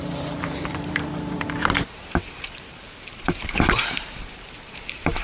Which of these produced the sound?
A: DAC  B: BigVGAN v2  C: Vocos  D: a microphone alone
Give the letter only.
B